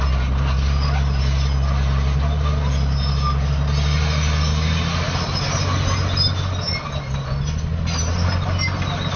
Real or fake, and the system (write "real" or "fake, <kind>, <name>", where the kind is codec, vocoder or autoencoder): real